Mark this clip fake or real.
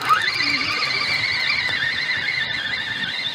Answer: real